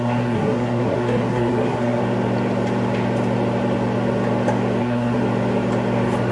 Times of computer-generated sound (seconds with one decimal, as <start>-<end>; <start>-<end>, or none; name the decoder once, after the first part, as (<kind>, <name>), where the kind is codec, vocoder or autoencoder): 0.0-2.0 (codec, SNAC); 4.8-5.2